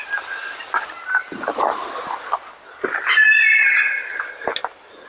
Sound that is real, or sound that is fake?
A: real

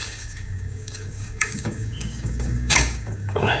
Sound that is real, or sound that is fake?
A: fake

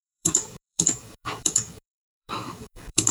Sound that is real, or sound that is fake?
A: fake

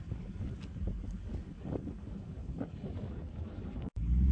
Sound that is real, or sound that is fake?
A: fake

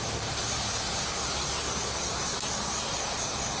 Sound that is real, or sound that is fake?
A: real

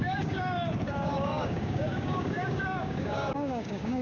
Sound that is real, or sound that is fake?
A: fake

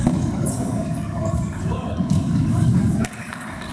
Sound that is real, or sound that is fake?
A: fake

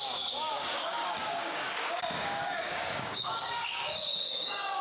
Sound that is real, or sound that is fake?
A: fake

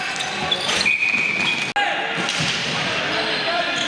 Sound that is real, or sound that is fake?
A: real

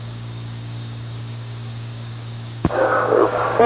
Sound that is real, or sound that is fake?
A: fake